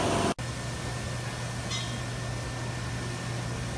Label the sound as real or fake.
real